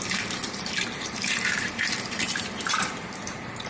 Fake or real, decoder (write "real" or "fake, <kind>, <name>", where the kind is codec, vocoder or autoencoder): fake, vocoder, BigVGAN v2